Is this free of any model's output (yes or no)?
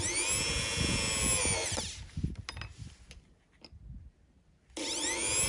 yes